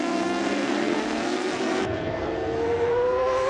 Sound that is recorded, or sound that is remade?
remade